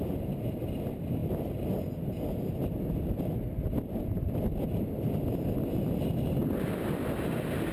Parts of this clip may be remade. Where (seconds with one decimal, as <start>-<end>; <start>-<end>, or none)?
none